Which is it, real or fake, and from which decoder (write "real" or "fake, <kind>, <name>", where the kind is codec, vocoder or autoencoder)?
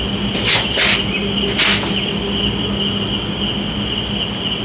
real